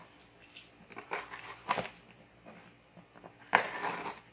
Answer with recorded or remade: recorded